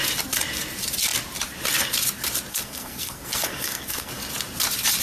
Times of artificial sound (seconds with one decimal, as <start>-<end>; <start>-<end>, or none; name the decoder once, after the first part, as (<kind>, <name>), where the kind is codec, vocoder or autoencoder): 2.5-4.1 (codec, SNAC)